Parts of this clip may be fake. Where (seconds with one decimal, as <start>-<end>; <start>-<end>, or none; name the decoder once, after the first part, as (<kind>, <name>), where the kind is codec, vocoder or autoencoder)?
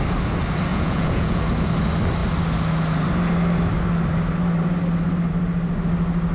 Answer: 0.7-1.4 (vocoder, Vocos)